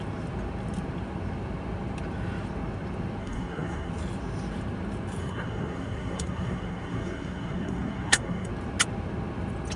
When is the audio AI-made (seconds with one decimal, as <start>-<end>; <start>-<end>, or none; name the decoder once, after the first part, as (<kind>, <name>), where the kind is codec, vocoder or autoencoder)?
3.2-3.9 (codec, SNAC); 5.2-8.5